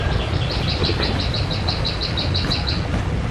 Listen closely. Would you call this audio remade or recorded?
recorded